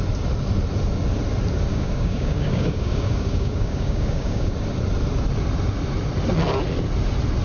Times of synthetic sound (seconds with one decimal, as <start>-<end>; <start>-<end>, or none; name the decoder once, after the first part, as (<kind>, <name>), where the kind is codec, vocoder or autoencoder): 1.7-4.5 (codec, DAC)